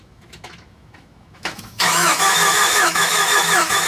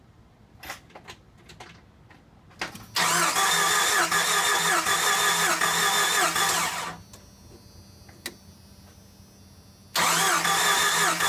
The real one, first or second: second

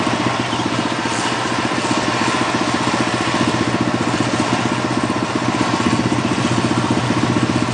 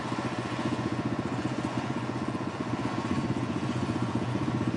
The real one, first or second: first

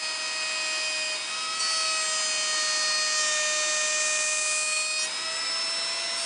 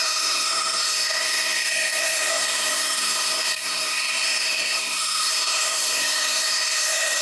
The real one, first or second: first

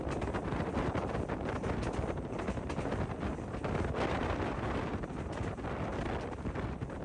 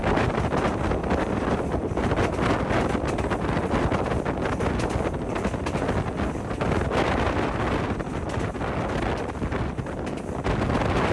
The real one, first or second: second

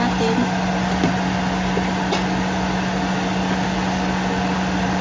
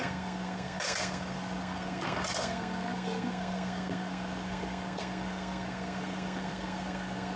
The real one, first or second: first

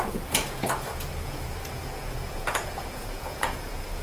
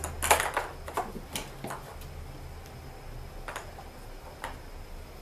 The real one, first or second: second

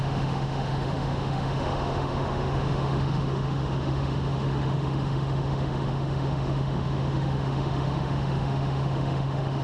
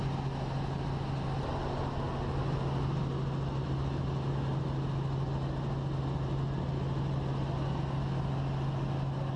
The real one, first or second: second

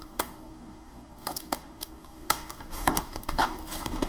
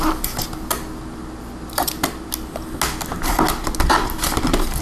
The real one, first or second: second